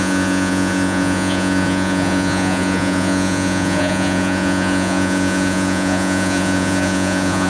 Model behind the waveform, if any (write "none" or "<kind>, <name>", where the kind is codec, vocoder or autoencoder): vocoder, Vocos